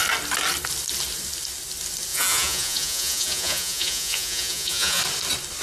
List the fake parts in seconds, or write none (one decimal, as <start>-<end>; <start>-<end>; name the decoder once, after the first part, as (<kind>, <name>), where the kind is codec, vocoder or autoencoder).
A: 2.1-5.0 (vocoder, Vocos)